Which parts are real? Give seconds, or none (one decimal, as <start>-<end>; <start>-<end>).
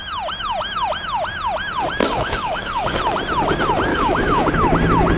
0.0-2.0; 3.0-3.9; 4.5-5.2